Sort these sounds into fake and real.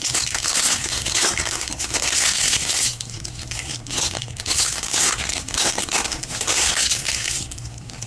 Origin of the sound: fake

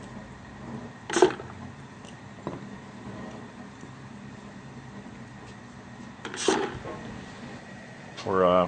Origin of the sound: real